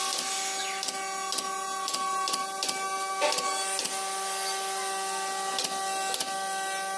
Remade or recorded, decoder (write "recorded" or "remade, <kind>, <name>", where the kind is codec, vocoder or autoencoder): recorded